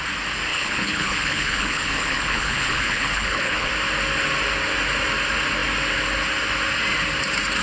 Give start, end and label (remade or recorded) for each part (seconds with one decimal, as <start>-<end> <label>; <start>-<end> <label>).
0.0-0.5 recorded; 0.5-3.7 remade; 3.7-7.6 recorded